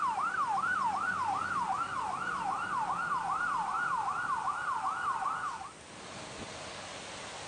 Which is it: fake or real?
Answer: real